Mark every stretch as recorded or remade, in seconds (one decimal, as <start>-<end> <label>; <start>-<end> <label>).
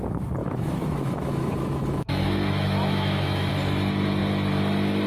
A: 0.0-0.4 recorded; 0.4-3.5 remade; 3.5-5.1 recorded